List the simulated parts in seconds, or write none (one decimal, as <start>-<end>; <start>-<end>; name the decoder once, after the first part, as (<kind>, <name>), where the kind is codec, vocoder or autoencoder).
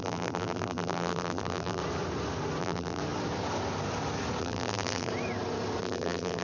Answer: 0.0-1.8 (vocoder, BigVGAN v2); 2.6-3.0; 4.4-5.1; 5.8-6.4